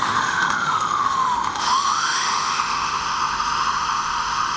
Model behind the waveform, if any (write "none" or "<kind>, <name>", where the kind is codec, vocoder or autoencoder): autoencoder, DAC-VAE